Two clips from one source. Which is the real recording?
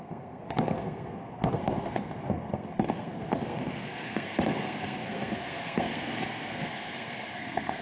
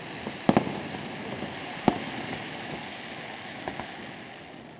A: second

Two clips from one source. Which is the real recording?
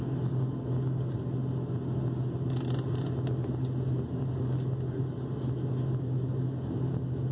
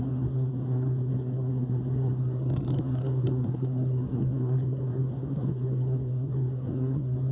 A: first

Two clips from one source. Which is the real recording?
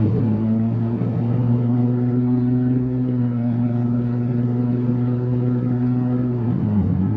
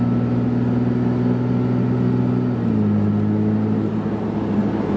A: second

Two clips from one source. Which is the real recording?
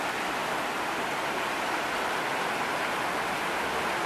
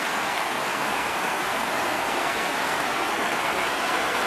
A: first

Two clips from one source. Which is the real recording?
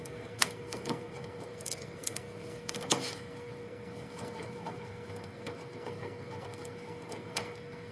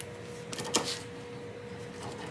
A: second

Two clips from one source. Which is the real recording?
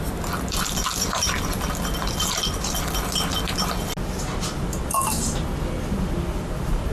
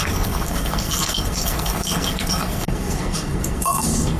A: first